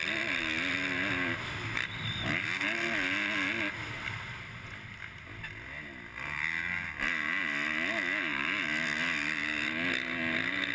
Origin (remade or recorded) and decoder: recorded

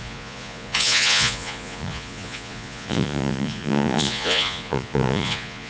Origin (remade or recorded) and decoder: remade, vocoder, Vocos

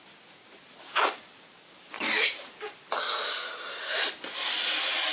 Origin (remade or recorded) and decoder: recorded